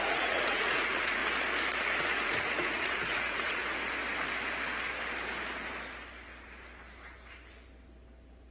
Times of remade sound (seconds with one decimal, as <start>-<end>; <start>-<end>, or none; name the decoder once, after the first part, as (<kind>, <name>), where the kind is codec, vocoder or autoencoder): 0.0-1.2 (vocoder, Vocos); 2.0-3.6